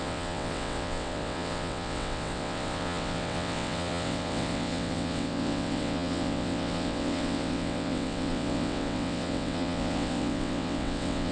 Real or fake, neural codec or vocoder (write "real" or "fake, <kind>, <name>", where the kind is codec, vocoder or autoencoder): fake, vocoder, WaveNeXt